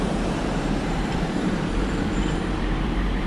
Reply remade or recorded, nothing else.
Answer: remade